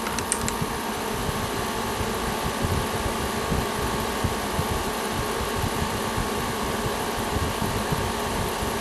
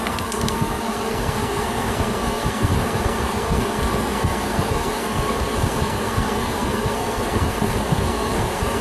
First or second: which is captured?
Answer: first